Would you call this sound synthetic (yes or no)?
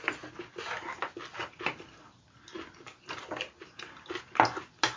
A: no